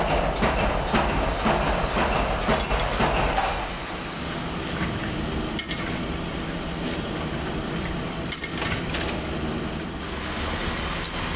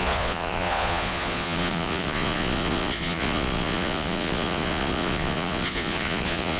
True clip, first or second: first